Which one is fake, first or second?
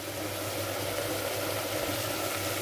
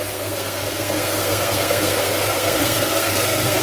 second